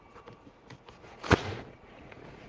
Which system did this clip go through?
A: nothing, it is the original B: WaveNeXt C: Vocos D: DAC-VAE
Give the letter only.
C